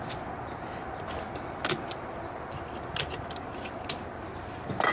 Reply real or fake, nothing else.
real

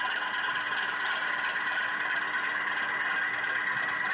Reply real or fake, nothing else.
real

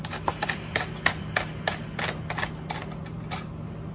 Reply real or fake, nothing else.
real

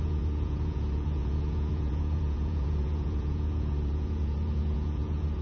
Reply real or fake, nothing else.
fake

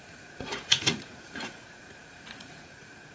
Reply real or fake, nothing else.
fake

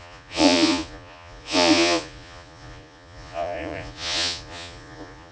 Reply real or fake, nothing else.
fake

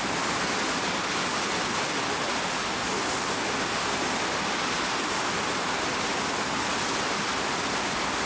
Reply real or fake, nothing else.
real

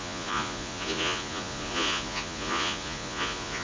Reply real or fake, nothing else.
fake